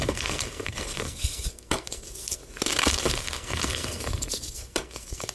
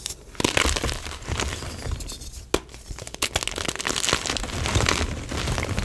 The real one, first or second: second